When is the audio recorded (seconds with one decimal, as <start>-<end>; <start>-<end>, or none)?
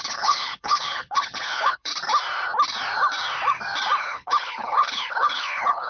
1.9-4.0